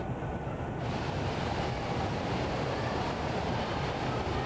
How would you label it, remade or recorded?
remade